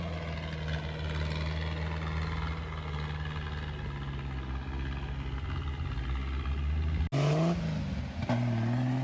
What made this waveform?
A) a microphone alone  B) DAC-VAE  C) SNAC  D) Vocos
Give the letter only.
A